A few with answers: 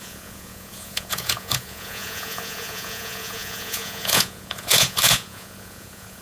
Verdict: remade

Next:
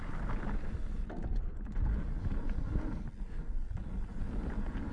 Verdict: recorded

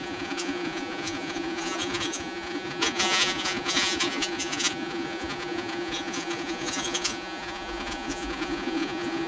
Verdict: remade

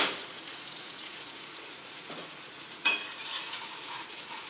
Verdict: remade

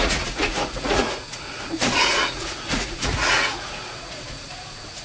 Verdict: remade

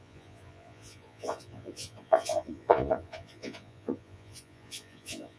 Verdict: remade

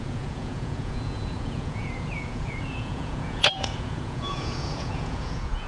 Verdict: remade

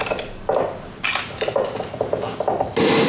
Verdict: recorded